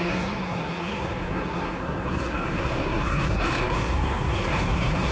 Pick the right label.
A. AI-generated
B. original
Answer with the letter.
A